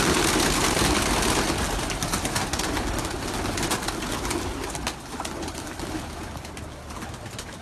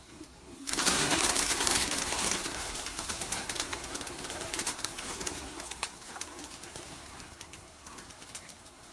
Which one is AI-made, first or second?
second